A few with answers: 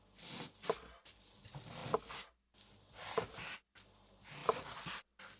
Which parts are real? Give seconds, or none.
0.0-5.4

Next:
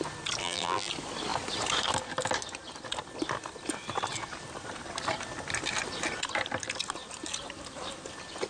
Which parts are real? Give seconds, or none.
0.0-0.4; 0.9-8.5

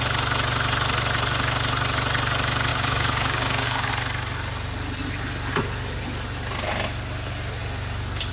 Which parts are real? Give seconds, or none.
0.0-2.7; 3.9-8.3

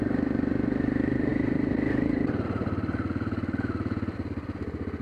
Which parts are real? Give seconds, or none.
0.0-5.0

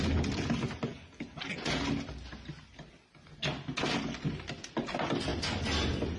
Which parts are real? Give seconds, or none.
0.0-6.2

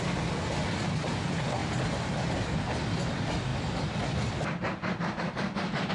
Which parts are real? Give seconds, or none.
0.0-1.6; 2.6-3.5

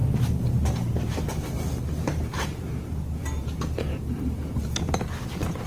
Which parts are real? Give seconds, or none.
0.0-5.7